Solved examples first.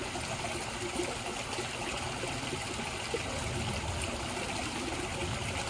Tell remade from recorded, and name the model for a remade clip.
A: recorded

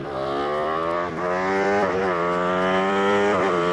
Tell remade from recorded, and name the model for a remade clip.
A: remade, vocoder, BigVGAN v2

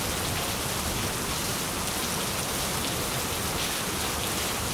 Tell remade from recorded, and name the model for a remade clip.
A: recorded